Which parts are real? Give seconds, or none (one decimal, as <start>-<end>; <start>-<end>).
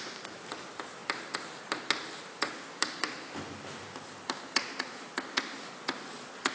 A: 0.0-6.5